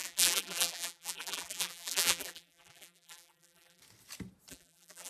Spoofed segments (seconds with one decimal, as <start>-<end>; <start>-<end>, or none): 0.0-3.8; 4.5-5.1